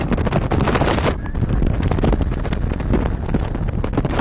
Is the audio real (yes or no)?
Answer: yes